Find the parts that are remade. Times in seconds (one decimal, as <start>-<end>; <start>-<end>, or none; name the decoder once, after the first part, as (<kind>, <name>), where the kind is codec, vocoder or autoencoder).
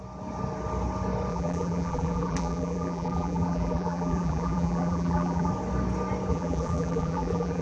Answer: 1.3-5.5 (vocoder, BigVGAN v2); 6.3-7.6